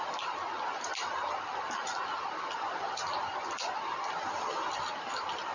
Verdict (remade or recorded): remade